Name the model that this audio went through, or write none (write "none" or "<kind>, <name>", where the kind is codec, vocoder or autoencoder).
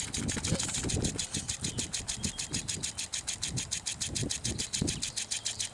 none